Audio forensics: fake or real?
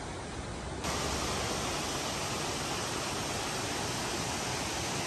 real